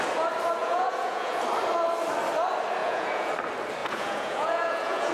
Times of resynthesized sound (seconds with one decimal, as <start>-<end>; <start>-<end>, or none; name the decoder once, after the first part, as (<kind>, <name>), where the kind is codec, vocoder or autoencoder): 0.6-1.4 (vocoder, Vocos); 2.8-3.3; 3.8-5.1